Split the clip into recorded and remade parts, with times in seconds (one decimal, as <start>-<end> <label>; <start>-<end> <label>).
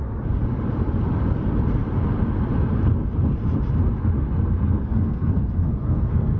0.0-4.8 recorded; 4.8-6.4 remade